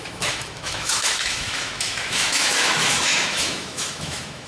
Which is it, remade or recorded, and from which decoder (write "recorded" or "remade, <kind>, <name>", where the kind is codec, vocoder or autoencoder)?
remade, autoencoder, DAC-VAE